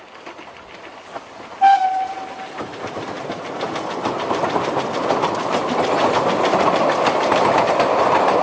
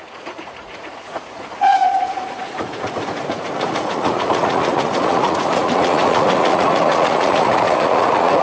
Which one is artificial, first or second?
second